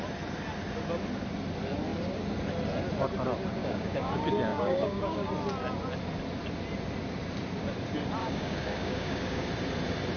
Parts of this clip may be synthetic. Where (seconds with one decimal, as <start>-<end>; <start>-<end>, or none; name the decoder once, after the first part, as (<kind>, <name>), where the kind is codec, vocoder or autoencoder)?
3.6-4.1 (codec, DAC); 4.5-5.3; 8.2-9.5

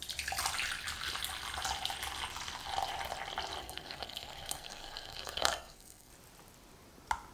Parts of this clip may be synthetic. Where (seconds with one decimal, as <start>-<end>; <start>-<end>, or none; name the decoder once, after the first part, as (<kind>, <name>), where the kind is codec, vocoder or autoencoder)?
3.6-6.1 (codec, SNAC)

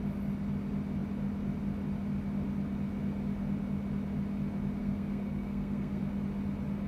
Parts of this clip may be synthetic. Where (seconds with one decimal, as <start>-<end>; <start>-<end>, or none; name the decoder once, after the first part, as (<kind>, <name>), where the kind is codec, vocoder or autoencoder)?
4.8-6.0 (codec, SNAC)

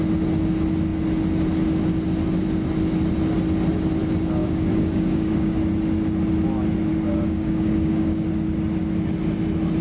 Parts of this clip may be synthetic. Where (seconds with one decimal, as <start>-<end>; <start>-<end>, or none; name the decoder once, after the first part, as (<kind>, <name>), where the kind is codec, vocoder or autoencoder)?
4.4-5.6 (codec, DAC); 6.9-8.3

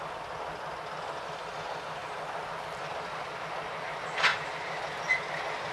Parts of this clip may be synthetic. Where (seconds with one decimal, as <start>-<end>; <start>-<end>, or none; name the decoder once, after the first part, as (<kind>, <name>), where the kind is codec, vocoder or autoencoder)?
none

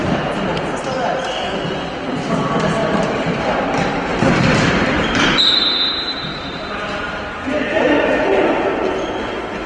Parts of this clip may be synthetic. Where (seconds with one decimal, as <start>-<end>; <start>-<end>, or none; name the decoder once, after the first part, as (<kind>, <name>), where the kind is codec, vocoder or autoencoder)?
0.0-0.7 (vocoder, BigVGAN v2); 2.8-3.5; 4.1-5.4; 6.3-8.9